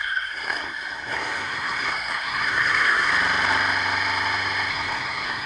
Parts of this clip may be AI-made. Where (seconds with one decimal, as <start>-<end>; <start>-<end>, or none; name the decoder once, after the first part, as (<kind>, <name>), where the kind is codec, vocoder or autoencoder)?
0.0-3.1 (codec, SNAC); 4.7-5.5